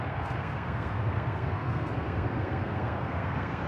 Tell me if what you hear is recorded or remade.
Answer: remade